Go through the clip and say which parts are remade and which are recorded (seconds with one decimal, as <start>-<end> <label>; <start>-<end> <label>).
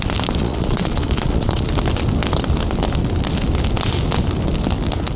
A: 0.0-0.4 recorded; 0.4-1.7 remade; 1.7-5.2 recorded